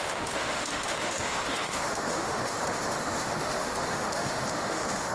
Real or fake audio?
fake